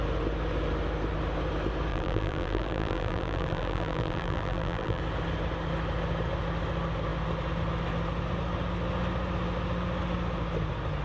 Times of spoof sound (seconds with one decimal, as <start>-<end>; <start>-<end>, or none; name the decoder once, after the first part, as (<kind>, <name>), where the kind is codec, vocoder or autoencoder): 1.9-5.0 (vocoder, BigVGAN v2)